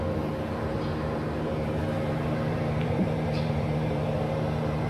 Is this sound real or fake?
fake